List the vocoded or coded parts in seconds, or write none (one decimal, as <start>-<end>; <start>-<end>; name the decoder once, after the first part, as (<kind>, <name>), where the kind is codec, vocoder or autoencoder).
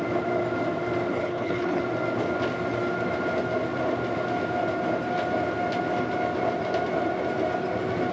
1.1-1.8 (codec, HILCodec)